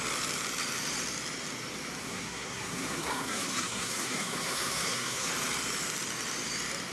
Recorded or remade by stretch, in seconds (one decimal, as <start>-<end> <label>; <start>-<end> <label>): 0.0-2.0 recorded; 2.0-5.3 remade; 5.3-6.9 recorded